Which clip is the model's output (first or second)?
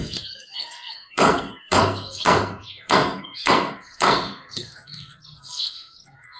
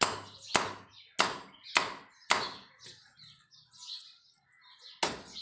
first